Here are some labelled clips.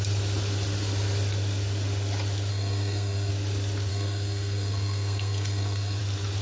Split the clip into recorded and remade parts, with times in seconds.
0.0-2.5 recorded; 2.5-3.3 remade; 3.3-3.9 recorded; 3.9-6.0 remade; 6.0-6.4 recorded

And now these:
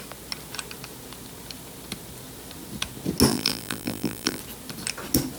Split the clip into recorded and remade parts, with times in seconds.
0.0-3.3 recorded; 3.3-4.4 remade; 4.4-5.4 recorded